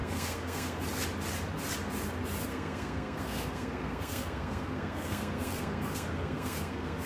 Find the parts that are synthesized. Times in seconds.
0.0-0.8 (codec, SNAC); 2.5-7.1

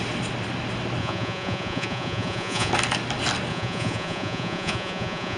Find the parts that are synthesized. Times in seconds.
1.0-2.7 (vocoder, Vocos); 3.5-5.4

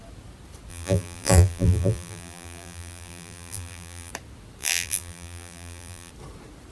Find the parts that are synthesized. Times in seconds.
0.7-4.1 (vocoder, BigVGAN v2); 4.6-6.1

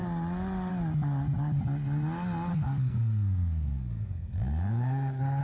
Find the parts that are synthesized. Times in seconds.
2.5-5.4 (codec, SNAC)